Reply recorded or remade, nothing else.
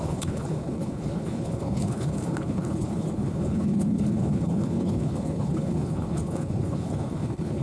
remade